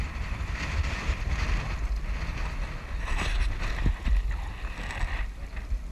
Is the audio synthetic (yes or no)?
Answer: no